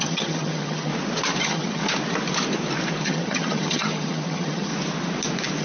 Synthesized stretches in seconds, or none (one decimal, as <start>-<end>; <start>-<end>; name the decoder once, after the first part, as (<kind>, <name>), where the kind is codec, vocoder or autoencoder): 0.0-0.9 (vocoder, HiFi-GAN); 1.4-1.8; 3.0-4.7